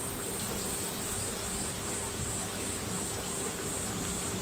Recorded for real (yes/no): yes